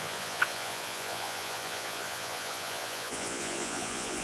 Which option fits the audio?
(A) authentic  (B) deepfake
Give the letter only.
B